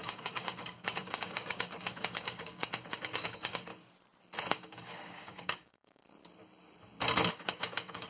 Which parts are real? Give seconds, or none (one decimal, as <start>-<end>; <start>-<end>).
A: 3.7-4.5; 6.0-7.3